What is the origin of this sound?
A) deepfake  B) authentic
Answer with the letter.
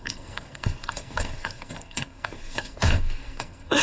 A